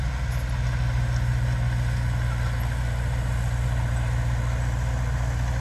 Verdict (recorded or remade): recorded